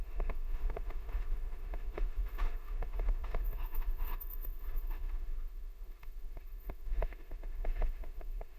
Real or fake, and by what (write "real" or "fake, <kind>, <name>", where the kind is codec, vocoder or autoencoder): fake, autoencoder, DAC-VAE